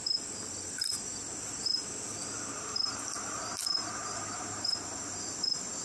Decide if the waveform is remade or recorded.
recorded